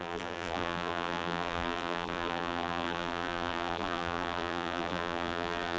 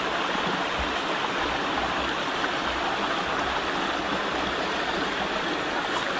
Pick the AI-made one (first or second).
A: first